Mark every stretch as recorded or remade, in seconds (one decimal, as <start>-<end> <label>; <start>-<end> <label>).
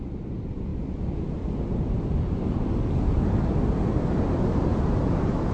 0.0-5.5 recorded